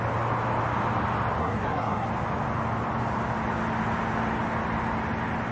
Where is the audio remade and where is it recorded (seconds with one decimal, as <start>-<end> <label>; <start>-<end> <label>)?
0.0-1.4 recorded; 1.4-2.1 remade; 2.1-5.5 recorded